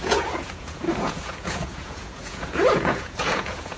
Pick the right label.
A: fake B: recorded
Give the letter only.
A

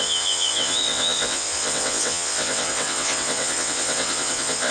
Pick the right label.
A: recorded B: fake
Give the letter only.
B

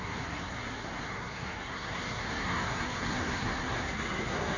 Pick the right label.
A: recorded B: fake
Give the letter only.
B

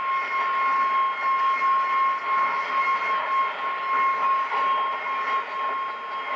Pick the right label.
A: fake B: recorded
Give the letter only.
B